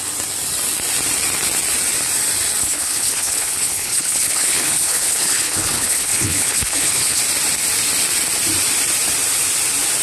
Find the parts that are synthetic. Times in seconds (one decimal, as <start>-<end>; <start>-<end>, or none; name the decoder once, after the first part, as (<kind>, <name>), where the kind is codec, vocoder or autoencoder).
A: 2.6-7.2 (codec, HILCodec)